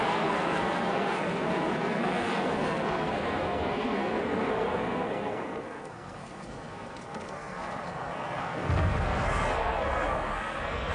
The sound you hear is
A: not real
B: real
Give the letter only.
A